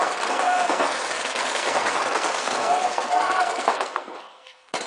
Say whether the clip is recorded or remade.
remade